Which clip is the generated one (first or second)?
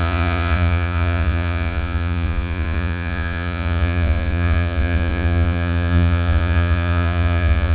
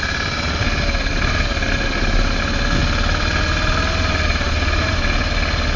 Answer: first